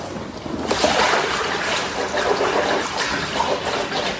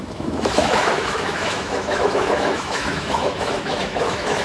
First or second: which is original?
first